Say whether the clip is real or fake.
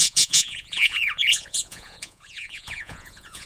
fake